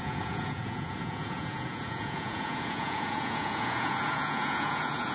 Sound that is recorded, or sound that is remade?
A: remade